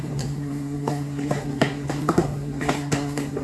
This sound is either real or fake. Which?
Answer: fake